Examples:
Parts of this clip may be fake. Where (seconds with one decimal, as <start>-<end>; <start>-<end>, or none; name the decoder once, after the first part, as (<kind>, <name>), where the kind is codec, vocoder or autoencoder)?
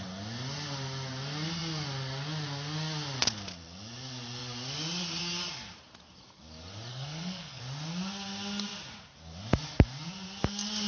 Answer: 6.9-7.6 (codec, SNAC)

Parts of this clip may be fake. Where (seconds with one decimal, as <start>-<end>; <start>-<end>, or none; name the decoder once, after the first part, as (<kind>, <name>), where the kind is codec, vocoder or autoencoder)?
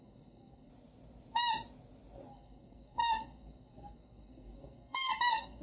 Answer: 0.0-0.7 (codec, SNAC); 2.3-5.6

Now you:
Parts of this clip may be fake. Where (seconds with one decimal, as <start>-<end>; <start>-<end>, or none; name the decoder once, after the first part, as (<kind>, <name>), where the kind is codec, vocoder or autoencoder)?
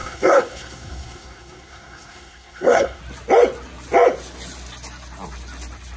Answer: 0.0-3.0 (codec, SNAC)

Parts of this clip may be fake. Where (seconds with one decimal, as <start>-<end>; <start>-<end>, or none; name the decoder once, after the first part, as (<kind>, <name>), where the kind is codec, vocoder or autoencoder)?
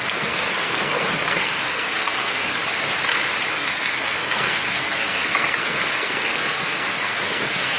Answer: 0.0-2.6 (codec, SNAC); 3.5-7.8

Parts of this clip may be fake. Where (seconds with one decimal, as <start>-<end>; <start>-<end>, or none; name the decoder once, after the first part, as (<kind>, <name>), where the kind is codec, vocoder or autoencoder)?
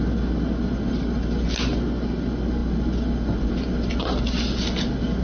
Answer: none